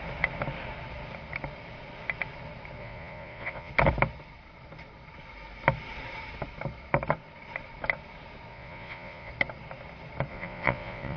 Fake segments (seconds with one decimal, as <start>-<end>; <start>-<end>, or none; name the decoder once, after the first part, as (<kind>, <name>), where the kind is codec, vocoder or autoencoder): 2.8-3.7 (vocoder, Vocos); 8.5-9.3; 10.3-11.2